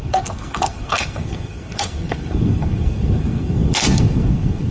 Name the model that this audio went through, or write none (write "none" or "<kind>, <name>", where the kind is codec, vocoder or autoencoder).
codec, SNAC